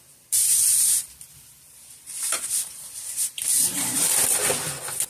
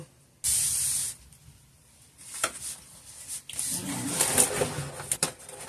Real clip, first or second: second